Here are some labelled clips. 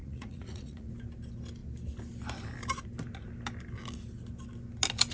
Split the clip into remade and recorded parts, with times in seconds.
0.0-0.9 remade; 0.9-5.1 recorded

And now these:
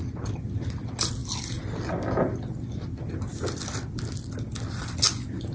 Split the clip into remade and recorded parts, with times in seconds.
0.0-3.3 recorded; 3.3-4.0 remade; 4.0-5.5 recorded

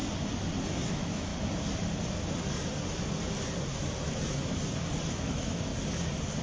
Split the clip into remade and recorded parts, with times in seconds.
0.0-0.9 recorded; 0.9-1.3 remade; 1.3-5.1 recorded; 5.1-5.7 remade; 5.7-6.4 recorded